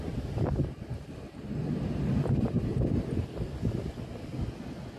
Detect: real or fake real